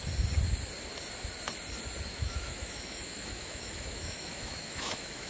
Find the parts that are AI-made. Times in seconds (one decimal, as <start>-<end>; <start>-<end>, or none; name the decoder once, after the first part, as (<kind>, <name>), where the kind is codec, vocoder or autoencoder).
2.1-5.3 (autoencoder, DAC-VAE)